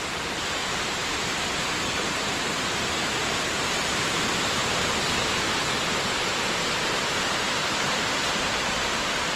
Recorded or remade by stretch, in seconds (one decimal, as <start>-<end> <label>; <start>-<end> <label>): 0.0-4.6 remade; 4.6-5.6 recorded; 5.6-9.4 remade